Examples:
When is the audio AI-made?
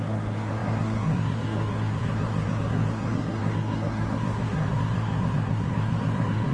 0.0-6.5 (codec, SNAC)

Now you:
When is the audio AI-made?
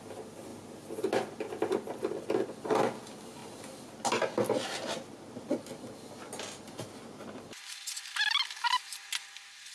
none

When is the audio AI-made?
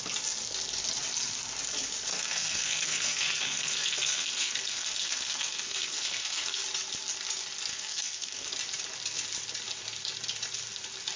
2.1-6.6 (codec, SNAC); 7.7-8.5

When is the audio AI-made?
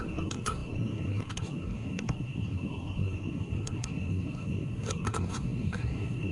0.0-6.3 (codec, SNAC)